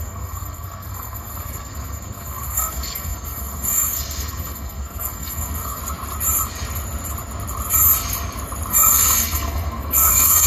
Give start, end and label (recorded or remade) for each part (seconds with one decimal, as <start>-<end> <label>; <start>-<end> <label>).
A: 0.0-5.8 remade; 5.8-8.7 recorded; 8.7-10.5 remade